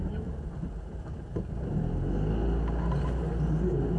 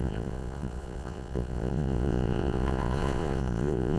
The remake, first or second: second